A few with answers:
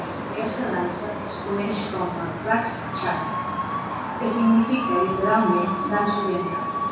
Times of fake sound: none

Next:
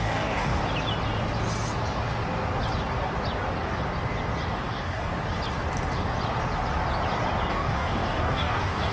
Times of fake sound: 0.0-0.6 (codec, DAC); 4.5-5.1; 7.5-8.9

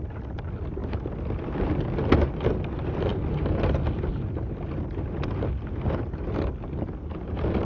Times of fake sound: none

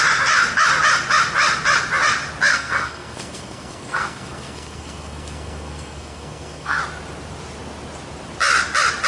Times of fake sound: 2.5-6.8 (codec, SNAC)

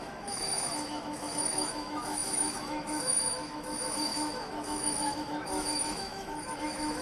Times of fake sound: 0.0-7.0 (autoencoder, DAC-VAE)

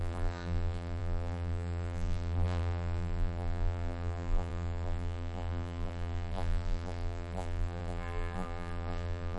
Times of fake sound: 0.0-9.4 (vocoder, BigVGAN v2)

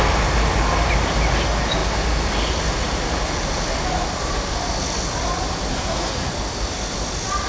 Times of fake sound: 5.7-6.3 (codec, SNAC)